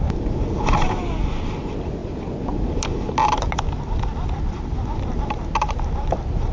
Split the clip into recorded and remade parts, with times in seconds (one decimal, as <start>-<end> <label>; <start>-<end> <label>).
0.0-6.5 recorded